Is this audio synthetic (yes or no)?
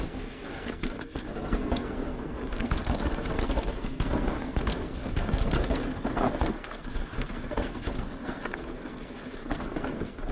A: yes